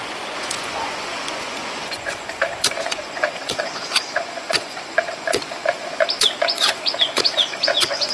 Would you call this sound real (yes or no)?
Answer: no